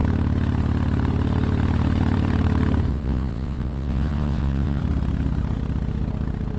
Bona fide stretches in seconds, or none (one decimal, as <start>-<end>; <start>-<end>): 0.0-2.9; 4.8-6.6